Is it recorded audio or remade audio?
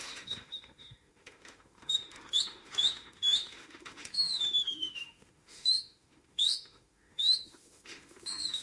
remade